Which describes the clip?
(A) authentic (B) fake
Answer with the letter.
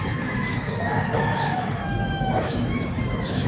B